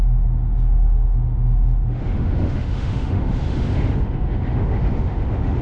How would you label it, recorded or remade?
remade